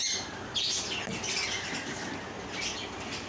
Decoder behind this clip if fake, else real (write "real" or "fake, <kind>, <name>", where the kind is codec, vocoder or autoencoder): real